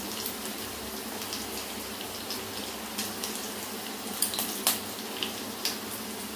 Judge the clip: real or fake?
real